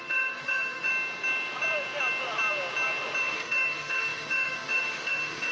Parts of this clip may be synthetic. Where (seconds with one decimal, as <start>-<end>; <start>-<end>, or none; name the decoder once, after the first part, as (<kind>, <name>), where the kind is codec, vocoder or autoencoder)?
0.0-0.9 (autoencoder, DAC-VAE); 3.2-5.5